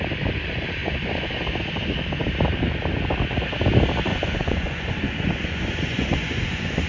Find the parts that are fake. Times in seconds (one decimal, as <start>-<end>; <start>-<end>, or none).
0.8-1.4; 4.1-6.9

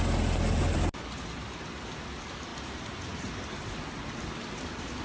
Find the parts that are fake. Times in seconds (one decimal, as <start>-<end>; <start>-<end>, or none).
none

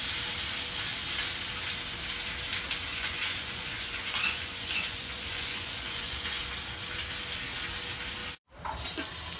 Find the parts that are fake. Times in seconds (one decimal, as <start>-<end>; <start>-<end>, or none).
2.9-6.4

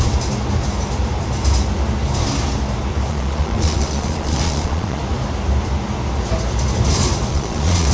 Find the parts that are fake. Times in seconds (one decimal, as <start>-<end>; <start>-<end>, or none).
3.1-5.0; 7.3-7.9

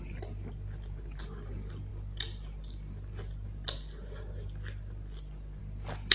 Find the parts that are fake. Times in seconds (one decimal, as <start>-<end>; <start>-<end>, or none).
none

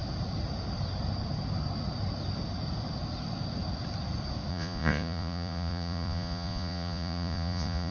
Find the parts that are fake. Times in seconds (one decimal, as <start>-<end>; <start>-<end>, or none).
4.5-7.9